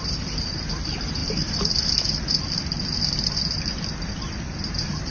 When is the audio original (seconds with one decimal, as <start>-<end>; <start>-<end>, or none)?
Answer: 0.0-5.1